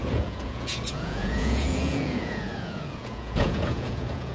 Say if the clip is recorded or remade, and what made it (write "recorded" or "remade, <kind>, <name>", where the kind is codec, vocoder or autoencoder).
remade, vocoder, Vocos